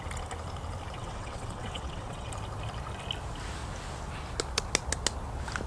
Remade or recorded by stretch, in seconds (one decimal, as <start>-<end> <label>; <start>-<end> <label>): 0.0-1.0 recorded; 1.0-2.3 remade; 2.3-5.7 recorded

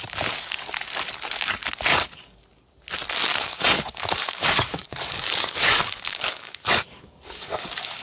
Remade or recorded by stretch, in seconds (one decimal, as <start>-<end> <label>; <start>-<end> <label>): 0.0-1.9 recorded; 1.9-2.4 remade; 2.4-3.3 recorded; 3.3-8.0 remade

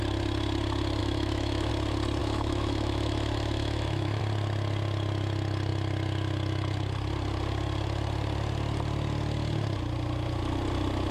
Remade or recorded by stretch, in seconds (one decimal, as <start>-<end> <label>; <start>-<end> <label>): 0.0-1.0 recorded; 1.0-1.7 remade; 1.7-2.2 recorded; 2.2-4.2 remade; 4.2-11.1 recorded

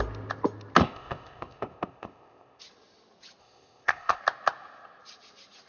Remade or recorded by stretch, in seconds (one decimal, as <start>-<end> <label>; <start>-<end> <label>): 0.0-0.8 recorded; 0.8-2.6 remade; 2.6-3.4 recorded; 3.4-4.2 remade; 4.2-5.7 recorded